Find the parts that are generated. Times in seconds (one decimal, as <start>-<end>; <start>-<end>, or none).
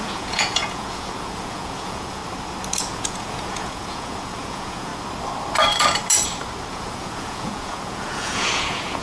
0.0-2.2; 2.8-4.9; 6.7-9.0